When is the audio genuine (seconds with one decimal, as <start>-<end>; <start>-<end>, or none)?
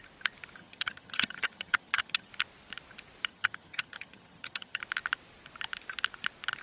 0.0-0.6; 2.3-3.3; 4.8-6.6